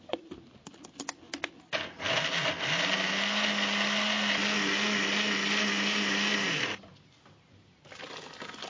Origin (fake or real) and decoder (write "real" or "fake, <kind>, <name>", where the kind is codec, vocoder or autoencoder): real